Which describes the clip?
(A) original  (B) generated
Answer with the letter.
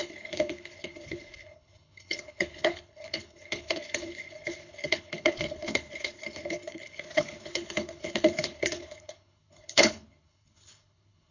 B